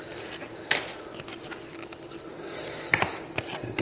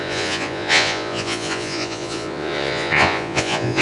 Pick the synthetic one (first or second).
second